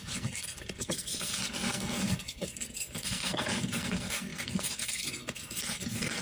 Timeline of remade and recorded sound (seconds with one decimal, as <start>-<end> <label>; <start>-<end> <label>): 0.0-6.2 remade